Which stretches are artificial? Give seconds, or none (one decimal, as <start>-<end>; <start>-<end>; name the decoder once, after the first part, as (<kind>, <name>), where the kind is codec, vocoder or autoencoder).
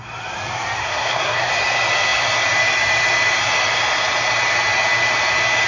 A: 0.8-1.5 (codec, SNAC)